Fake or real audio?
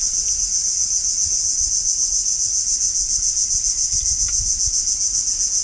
real